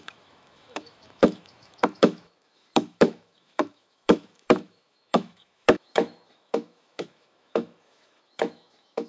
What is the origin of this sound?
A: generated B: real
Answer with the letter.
A